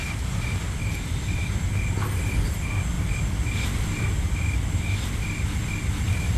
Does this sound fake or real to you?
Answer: real